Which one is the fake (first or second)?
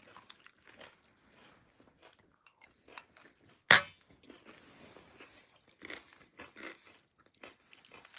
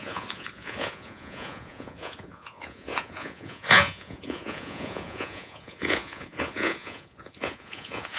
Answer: second